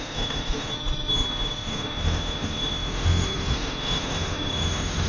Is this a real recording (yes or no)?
no